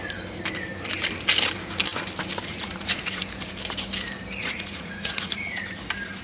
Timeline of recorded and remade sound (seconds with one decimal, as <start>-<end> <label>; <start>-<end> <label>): 0.0-2.5 recorded; 2.5-3.2 remade; 3.2-4.4 recorded; 4.4-5.6 remade; 5.6-6.2 recorded